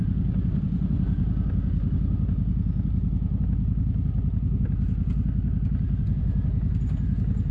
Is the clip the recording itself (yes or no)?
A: yes